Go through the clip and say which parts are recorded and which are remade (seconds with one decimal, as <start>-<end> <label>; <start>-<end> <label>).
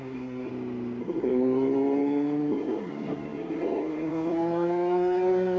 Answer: 0.0-0.5 remade; 0.5-1.0 recorded; 1.0-5.6 remade